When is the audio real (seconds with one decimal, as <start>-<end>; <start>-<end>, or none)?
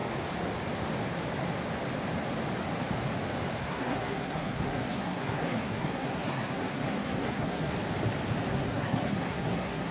0.0-3.6; 7.7-8.5